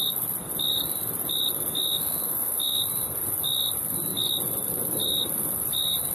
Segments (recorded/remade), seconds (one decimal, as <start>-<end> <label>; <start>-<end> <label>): 0.0-1.9 recorded; 1.9-2.8 remade; 2.8-6.1 recorded